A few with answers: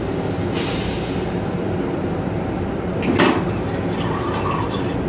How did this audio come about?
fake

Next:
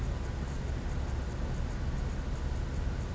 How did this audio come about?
real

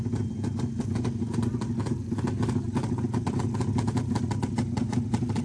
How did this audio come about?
real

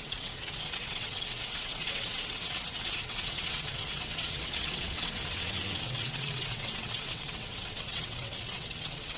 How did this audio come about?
fake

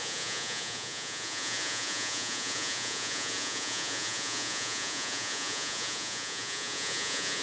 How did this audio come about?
fake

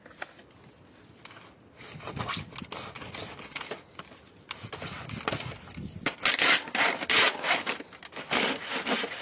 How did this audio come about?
real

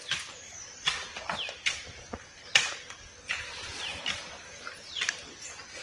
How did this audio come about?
real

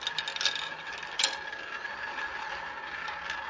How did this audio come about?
real